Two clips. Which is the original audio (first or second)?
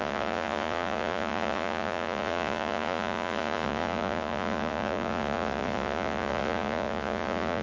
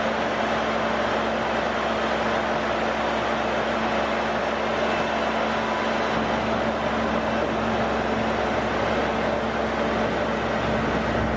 second